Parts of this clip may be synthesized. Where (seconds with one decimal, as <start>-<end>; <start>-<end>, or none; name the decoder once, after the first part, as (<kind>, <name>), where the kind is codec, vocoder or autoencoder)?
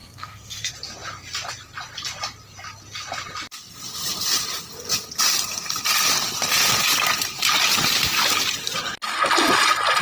0.0-0.7 (codec, SNAC)